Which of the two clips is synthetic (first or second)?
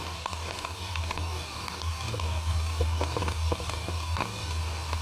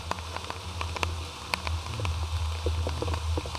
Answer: first